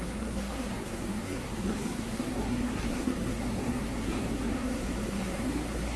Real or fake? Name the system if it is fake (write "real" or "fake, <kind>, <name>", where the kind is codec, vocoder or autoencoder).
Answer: fake, codec, SNAC